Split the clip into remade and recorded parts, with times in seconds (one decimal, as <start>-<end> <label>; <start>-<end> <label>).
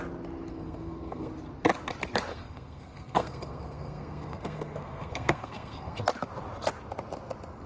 0.0-0.5 recorded; 0.5-1.3 remade; 1.3-2.3 recorded; 2.3-6.0 remade; 6.0-7.7 recorded